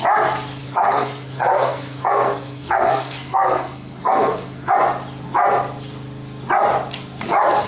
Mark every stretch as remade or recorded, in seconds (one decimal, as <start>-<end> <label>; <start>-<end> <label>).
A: 0.0-0.6 recorded; 0.6-4.7 remade; 4.7-7.7 recorded